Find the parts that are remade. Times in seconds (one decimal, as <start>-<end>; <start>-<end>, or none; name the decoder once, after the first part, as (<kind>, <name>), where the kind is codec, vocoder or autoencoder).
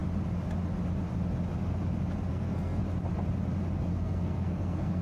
2.3-2.8 (codec, SNAC); 3.8-5.0